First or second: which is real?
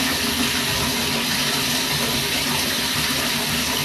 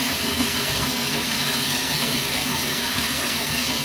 first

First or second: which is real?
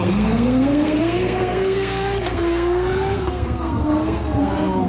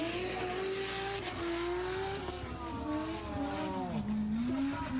second